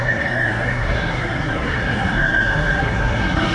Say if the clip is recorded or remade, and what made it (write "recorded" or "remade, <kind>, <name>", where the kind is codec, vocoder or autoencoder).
remade, codec, SNAC